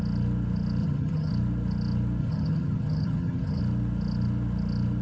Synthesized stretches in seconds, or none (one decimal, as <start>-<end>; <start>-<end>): 0.8-1.3; 2.2-3.6